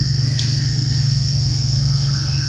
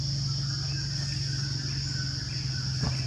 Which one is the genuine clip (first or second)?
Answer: second